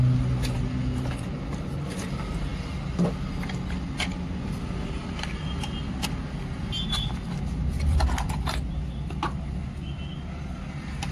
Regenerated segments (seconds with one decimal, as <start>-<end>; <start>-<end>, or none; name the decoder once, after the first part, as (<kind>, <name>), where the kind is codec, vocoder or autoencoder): none